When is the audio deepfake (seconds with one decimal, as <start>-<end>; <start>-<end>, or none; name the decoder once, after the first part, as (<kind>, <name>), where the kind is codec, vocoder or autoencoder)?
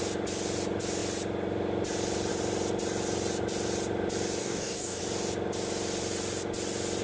4.4-5.0 (codec, DAC)